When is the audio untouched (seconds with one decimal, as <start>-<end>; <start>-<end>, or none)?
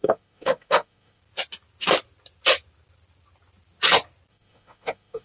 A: 1.2-4.3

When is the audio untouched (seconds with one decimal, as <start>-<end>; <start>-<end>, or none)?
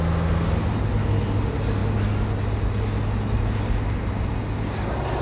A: 0.0-5.2